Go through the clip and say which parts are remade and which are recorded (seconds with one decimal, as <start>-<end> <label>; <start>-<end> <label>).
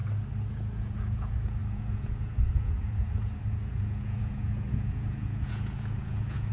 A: 0.0-0.5 recorded; 0.5-6.5 remade